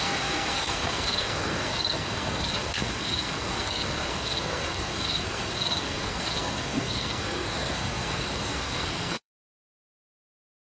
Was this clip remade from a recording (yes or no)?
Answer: yes